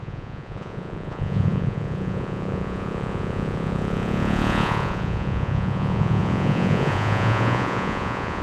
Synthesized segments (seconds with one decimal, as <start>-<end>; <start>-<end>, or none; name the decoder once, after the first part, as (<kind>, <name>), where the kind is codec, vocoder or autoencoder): 0.0-8.4 (vocoder, Vocos)